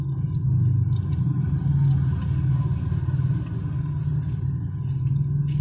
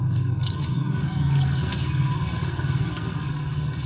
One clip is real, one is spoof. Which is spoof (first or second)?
second